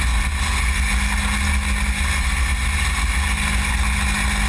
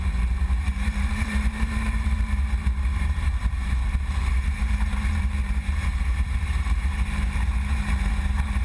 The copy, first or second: second